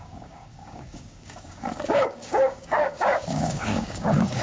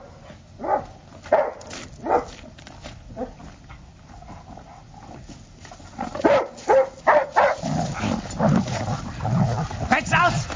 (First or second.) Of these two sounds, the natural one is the second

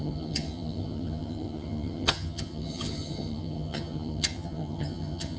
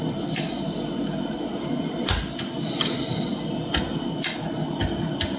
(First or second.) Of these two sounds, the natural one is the second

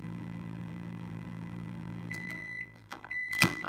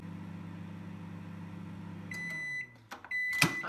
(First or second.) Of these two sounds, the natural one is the second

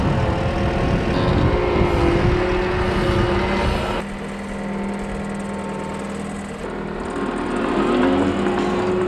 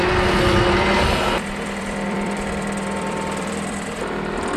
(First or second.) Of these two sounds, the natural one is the first